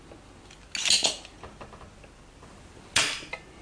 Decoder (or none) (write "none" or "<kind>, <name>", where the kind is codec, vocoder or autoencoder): none